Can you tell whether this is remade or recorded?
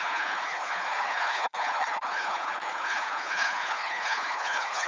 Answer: remade